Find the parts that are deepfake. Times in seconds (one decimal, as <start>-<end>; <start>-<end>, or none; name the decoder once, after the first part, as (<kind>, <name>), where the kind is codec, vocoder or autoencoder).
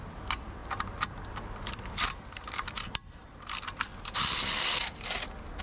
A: 0.0-0.6 (vocoder, BigVGAN v2); 1.3-3.9